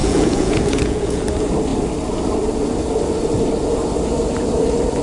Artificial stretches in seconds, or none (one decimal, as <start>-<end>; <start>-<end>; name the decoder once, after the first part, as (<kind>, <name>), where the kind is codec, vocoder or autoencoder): 0.0-1.2 (vocoder, Vocos)